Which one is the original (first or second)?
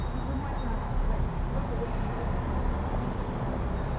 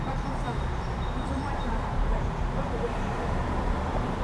first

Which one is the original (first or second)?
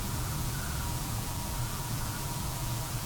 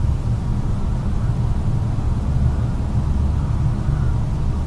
second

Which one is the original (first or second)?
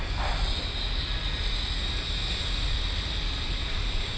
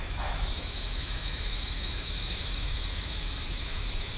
first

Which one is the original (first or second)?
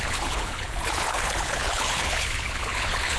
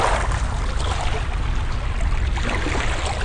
second